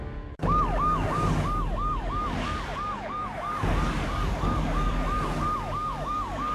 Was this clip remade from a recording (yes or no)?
yes